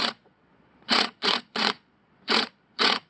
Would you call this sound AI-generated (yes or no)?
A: yes